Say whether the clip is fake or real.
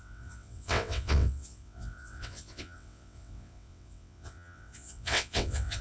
fake